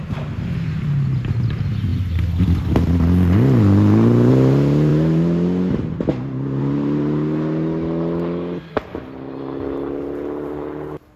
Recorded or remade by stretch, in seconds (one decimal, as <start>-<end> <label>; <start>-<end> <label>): 0.0-11.2 recorded